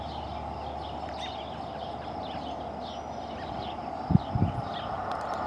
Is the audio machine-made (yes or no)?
no